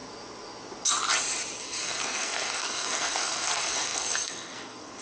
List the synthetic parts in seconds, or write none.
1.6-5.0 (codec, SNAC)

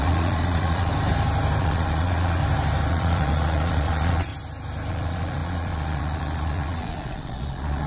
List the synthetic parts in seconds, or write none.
0.0-0.9 (vocoder, Vocos); 1.6-2.4; 2.9-4.3; 4.9-7.9

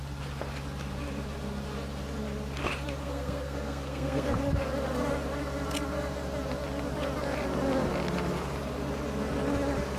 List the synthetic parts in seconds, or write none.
3.0-4.3 (codec, SNAC)

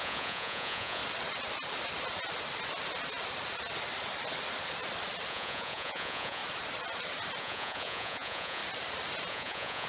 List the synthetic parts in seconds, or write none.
0.0-1.0 (vocoder, Vocos); 5.3-6.4; 7.4-8.6; 9.3-9.9

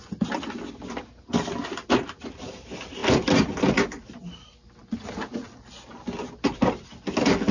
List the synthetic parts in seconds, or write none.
none

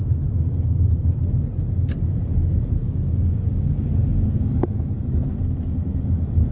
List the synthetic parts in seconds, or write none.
2.8-3.7 (codec, DAC)

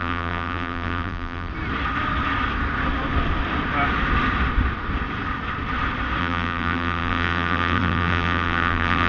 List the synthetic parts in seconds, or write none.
0.0-1.5 (vocoder, BigVGAN v2); 6.2-9.1